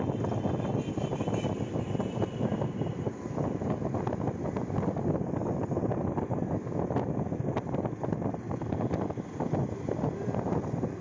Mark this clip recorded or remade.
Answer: recorded